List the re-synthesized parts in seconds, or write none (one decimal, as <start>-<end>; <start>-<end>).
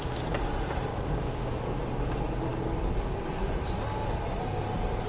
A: 0.9-1.6